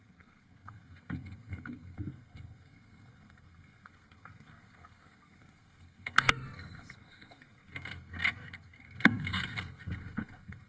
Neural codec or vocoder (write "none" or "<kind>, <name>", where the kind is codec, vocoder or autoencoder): codec, SNAC